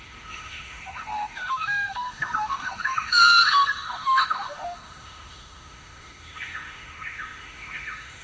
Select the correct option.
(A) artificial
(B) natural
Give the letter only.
A